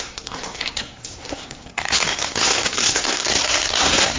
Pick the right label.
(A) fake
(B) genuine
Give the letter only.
A